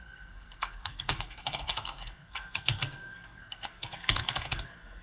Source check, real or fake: fake